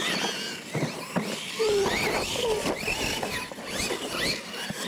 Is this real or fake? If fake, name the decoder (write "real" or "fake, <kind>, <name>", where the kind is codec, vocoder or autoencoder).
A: real